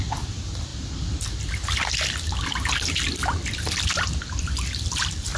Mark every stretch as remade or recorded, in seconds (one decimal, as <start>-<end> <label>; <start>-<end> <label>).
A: 0.0-5.4 remade

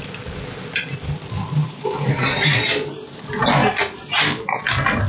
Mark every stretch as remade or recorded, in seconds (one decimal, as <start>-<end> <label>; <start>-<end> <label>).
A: 0.0-1.6 recorded; 1.6-3.2 remade; 3.2-3.6 recorded; 3.6-4.6 remade; 4.6-5.1 recorded

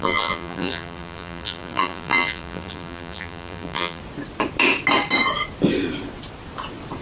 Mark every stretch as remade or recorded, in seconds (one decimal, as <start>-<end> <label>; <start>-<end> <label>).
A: 0.0-4.0 remade; 4.0-7.0 recorded

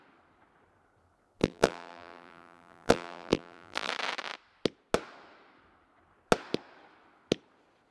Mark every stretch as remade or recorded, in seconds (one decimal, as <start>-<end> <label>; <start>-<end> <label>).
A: 0.0-1.4 recorded; 1.4-3.9 remade; 3.9-7.9 recorded